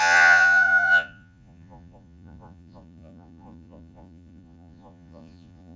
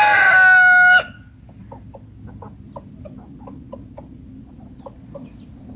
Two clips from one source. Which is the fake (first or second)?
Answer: first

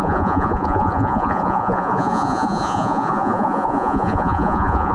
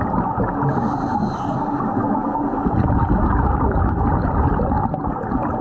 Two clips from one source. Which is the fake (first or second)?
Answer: first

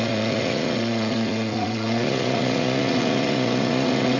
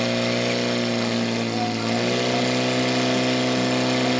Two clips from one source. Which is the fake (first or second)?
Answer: first